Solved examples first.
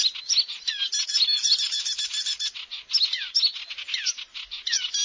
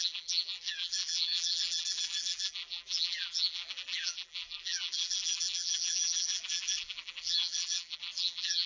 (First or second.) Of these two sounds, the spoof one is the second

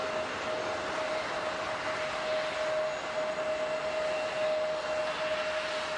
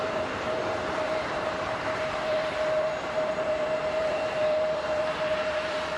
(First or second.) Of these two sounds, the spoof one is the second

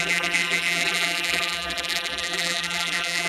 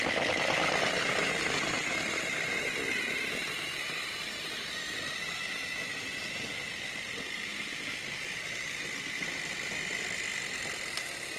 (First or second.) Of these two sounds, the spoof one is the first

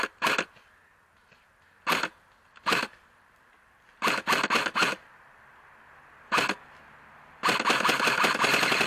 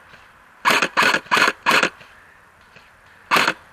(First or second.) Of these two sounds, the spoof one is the second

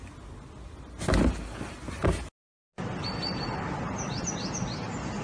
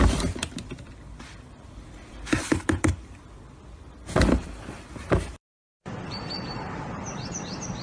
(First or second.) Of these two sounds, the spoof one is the second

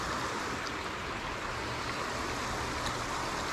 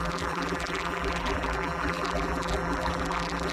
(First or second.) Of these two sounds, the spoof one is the second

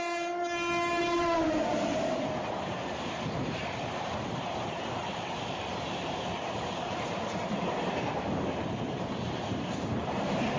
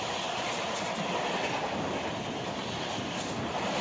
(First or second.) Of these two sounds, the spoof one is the first